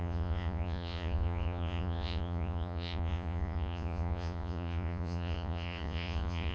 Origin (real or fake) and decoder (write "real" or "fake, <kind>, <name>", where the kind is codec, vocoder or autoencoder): fake, vocoder, Vocos